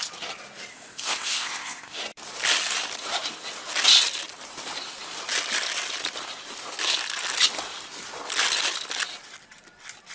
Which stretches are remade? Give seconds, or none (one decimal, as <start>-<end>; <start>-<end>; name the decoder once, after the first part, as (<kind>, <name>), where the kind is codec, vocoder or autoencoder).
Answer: 0.7-2.0 (codec, ZipCodec)